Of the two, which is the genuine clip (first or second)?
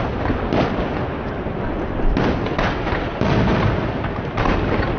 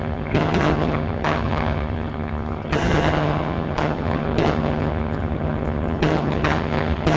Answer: first